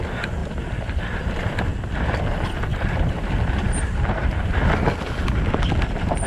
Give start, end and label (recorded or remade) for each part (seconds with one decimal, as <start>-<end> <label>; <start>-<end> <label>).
0.0-0.4 recorded; 0.4-1.0 remade; 1.0-2.7 recorded; 2.7-4.6 remade; 4.6-6.3 recorded